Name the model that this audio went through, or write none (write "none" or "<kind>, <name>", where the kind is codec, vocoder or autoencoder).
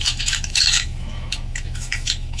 autoencoder, DAC-VAE